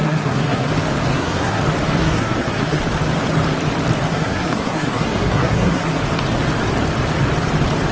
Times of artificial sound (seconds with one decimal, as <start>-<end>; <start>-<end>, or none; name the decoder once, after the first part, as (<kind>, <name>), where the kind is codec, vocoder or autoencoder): 0.0-0.7 (codec, SNAC); 1.1-1.6; 2.0-2.8; 4.1-5.9